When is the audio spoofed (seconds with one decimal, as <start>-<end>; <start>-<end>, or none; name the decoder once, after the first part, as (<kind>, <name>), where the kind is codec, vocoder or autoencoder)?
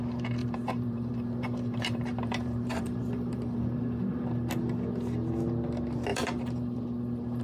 0.4-3.6 (vocoder, BigVGAN v2); 6.1-6.8